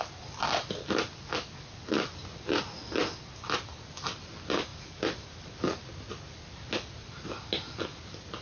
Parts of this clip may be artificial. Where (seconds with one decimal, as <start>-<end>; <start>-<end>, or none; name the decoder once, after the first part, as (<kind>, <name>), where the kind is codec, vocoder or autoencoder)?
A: none